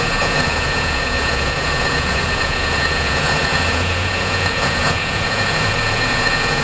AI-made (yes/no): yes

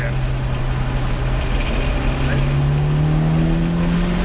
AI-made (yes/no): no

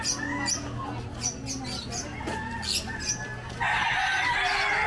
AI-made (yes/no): no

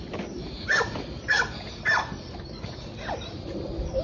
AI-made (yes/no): no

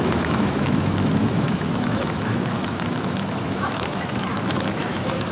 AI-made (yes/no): yes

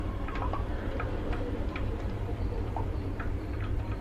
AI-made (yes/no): yes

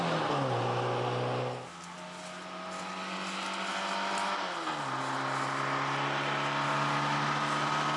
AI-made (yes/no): no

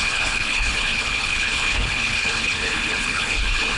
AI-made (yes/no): yes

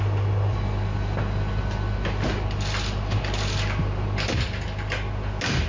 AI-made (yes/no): no